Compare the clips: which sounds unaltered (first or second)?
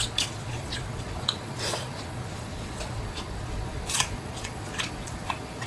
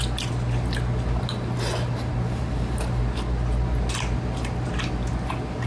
second